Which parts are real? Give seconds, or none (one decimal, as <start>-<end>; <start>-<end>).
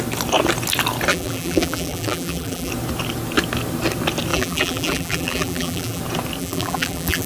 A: 0.0-1.1; 2.7-4.3; 6.0-6.4